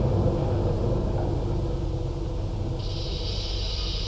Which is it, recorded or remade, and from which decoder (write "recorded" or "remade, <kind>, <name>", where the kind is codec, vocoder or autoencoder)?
recorded